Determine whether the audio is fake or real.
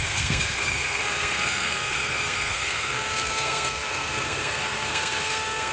fake